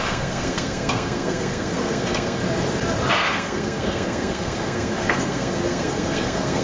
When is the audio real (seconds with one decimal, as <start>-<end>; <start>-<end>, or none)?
2.4-3.1